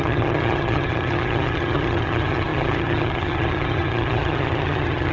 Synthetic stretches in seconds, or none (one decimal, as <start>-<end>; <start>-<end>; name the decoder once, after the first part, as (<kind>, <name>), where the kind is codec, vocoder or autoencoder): 0.0-5.1 (vocoder, HiFi-GAN)